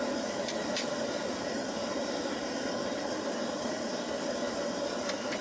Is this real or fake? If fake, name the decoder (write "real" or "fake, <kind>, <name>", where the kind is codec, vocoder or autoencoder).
real